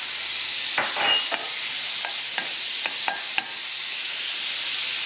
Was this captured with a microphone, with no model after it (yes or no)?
yes